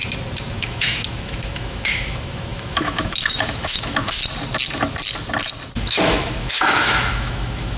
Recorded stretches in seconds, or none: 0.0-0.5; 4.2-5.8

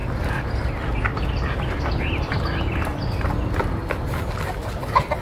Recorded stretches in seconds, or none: 0.0-5.2

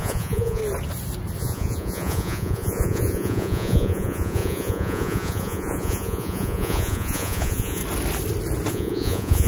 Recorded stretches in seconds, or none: 0.6-1.4; 7.8-8.7

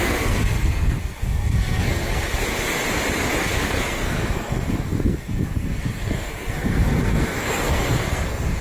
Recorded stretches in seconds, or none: 2.4-3.4

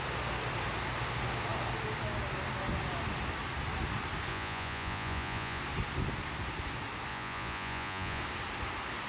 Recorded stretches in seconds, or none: 0.0-4.3; 5.6-7.1; 8.2-9.1

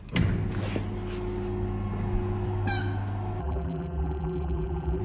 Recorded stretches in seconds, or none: 0.0-3.4

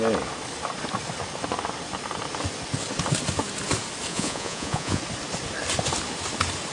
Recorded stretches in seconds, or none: 0.0-4.1; 5.0-6.7

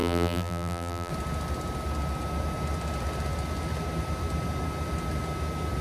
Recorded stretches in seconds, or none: 1.1-5.8